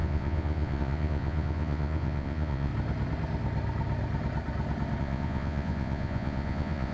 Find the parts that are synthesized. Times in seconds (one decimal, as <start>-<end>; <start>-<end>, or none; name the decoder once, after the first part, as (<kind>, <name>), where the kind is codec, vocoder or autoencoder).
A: 0.0-2.7 (vocoder, Vocos); 5.0-6.9